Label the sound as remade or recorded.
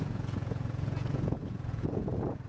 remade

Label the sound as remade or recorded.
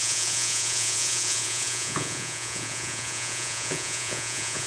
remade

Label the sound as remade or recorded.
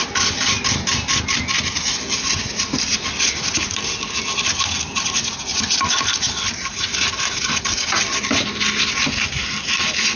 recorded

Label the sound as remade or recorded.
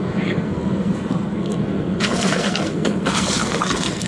remade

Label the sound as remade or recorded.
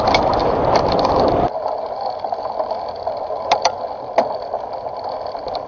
recorded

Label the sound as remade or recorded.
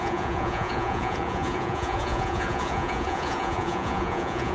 remade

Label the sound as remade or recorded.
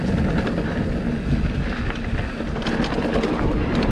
recorded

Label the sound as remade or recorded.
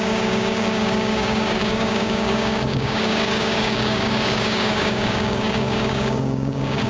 remade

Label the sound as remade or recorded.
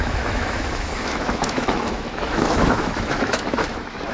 remade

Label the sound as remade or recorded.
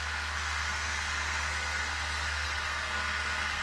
remade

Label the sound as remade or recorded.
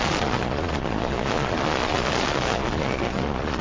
remade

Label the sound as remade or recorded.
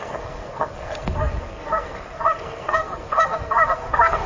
remade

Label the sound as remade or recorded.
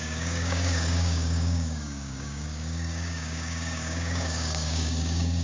remade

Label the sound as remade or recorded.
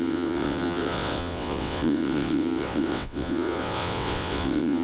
remade